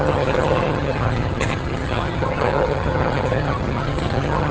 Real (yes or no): no